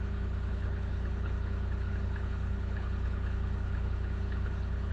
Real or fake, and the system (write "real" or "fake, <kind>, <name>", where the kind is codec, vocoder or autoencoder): fake, codec, HILCodec